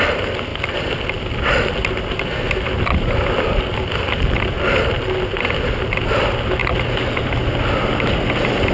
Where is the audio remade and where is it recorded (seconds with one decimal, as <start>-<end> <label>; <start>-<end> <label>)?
0.0-8.7 recorded